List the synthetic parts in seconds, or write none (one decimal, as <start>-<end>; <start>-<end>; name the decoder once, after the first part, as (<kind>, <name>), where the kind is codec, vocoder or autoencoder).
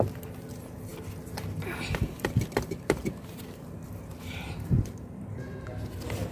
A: none